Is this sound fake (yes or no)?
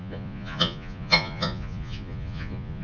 yes